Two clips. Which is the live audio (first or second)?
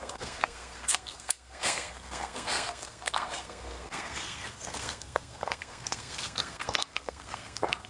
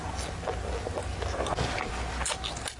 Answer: second